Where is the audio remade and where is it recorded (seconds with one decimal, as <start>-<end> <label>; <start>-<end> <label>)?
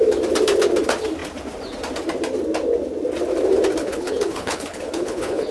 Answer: 0.0-3.8 recorded; 3.8-5.5 remade